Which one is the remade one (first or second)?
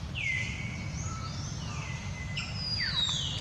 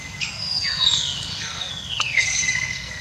second